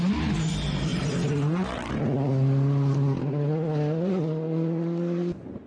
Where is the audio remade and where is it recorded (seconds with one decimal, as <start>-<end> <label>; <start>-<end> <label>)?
0.0-5.7 recorded